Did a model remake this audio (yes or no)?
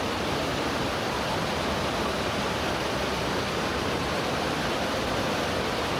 yes